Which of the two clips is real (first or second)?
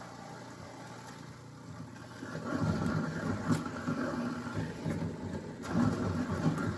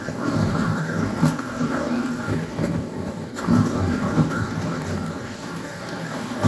first